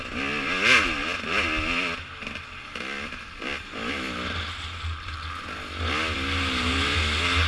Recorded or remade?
recorded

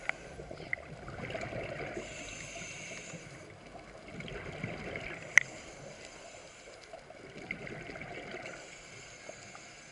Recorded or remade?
recorded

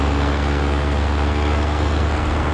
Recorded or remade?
remade